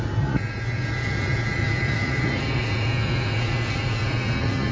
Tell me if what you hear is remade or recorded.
remade